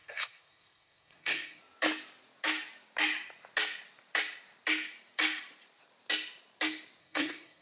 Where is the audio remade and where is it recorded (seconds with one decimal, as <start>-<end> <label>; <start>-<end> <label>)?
0.0-1.6 remade; 1.6-7.0 recorded; 7.0-7.6 remade